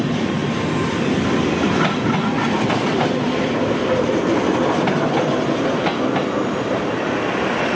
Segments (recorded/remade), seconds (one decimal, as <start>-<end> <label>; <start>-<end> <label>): 0.0-5.9 recorded; 5.9-6.8 remade; 6.8-7.8 recorded